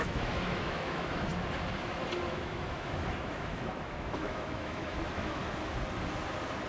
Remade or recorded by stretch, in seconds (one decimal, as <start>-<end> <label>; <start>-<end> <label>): 0.0-1.3 remade; 1.3-2.3 recorded; 2.3-5.4 remade; 5.4-6.7 recorded